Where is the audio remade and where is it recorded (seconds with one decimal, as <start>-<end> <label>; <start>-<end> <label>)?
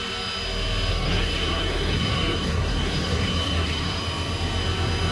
0.0-0.9 recorded; 0.9-4.0 remade; 4.0-5.1 recorded